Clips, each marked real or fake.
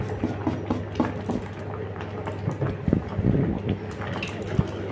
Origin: real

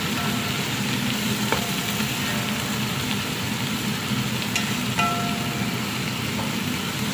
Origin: real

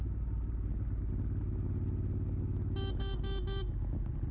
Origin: real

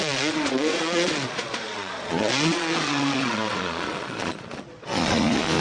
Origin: fake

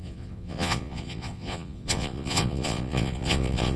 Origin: fake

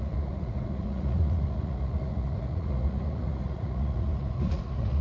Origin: fake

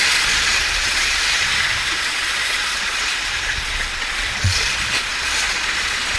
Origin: fake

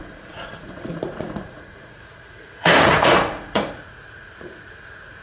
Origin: fake